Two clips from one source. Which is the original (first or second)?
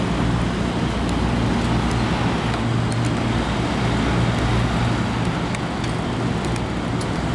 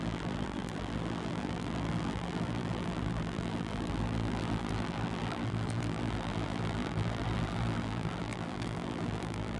first